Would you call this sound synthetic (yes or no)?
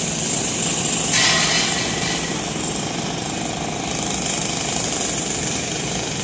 no